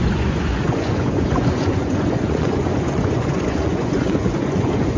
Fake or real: fake